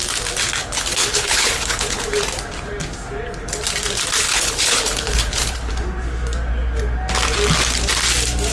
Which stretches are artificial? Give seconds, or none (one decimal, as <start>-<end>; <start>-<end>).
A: 0.6-2.0; 4.3-5.7